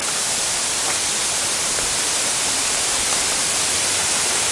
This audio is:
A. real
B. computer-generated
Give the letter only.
A